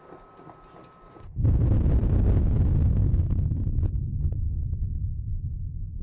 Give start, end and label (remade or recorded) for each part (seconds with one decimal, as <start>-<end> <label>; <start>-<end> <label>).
0.0-2.9 recorded; 2.9-5.5 remade; 5.5-6.0 recorded